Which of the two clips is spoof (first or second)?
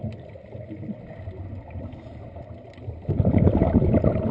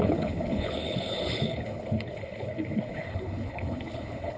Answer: second